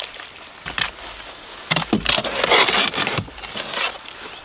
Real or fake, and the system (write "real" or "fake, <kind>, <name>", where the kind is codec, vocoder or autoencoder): real